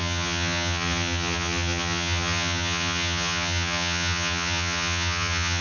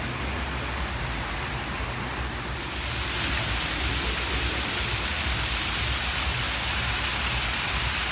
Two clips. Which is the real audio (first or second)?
second